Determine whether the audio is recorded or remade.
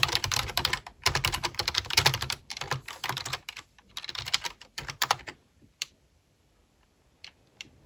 remade